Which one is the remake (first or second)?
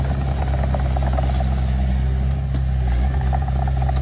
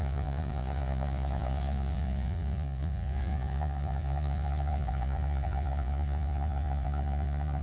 second